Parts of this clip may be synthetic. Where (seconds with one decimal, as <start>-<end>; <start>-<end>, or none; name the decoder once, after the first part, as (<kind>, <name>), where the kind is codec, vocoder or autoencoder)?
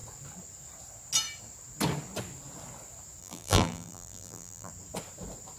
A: 3.2-4.7 (vocoder, BigVGAN v2)